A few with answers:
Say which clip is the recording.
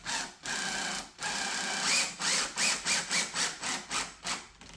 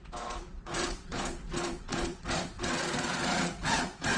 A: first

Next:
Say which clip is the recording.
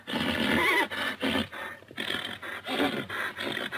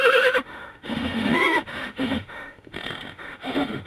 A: first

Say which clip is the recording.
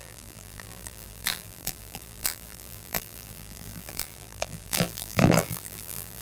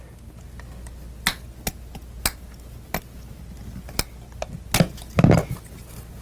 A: second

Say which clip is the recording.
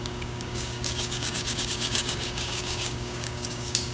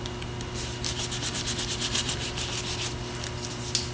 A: second